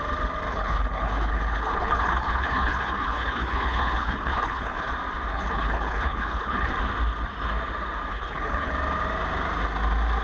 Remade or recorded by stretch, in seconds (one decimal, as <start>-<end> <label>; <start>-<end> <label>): 0.0-0.5 recorded; 0.5-4.8 remade; 4.8-5.3 recorded; 5.3-6.7 remade; 6.7-8.1 recorded; 8.1-8.7 remade; 8.7-10.2 recorded